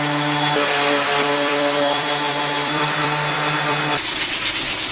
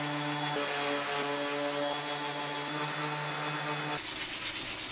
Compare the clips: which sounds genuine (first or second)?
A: second